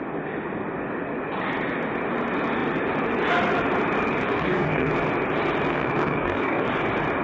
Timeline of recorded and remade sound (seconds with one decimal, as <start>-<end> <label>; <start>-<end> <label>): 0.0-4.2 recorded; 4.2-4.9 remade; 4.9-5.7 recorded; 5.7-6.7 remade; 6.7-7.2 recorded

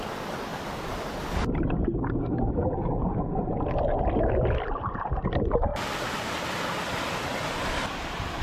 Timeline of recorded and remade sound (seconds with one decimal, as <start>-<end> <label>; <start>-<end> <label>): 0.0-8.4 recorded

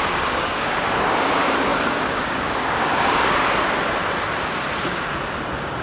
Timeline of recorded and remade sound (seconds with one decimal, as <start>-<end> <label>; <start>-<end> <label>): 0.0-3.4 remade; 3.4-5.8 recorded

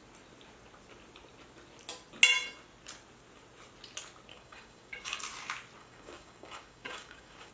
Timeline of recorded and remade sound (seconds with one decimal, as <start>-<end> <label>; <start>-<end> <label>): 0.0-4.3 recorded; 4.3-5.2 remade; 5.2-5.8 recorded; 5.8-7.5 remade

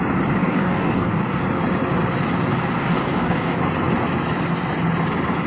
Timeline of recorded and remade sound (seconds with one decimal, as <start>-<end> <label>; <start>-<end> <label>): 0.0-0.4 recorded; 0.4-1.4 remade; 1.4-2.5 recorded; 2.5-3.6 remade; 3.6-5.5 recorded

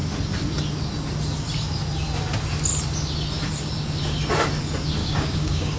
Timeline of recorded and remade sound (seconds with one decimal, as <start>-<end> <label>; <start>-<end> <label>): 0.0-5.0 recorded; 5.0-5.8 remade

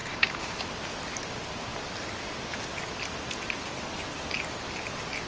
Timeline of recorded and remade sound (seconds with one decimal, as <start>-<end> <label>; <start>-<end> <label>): 0.0-0.6 remade; 0.6-5.3 recorded

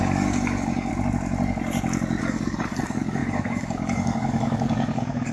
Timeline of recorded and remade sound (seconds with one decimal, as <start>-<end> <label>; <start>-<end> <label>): 0.0-0.9 remade; 0.9-2.2 recorded; 2.2-5.3 remade